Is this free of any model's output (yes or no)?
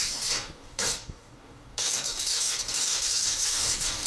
no